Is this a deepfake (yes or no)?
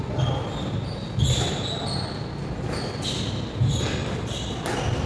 no